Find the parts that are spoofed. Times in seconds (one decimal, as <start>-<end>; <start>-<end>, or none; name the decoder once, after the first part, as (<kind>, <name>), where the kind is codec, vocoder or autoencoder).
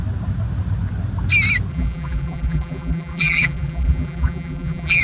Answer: 1.7-5.0 (vocoder, BigVGAN v2)